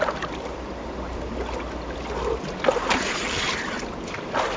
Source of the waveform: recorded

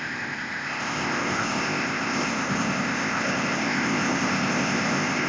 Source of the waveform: remade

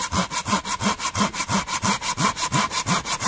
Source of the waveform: recorded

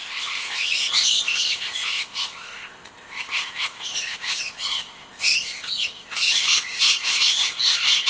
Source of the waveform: remade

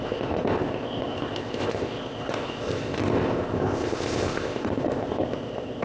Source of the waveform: remade